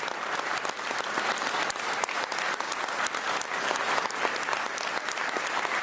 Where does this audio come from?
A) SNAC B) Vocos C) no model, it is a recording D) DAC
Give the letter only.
C